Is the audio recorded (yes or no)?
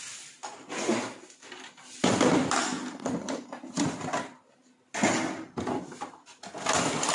yes